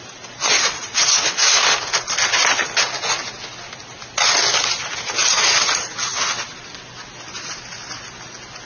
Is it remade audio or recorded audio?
recorded